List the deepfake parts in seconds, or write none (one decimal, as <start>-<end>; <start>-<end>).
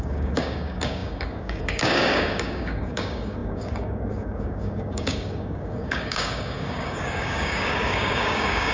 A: 0.0-8.7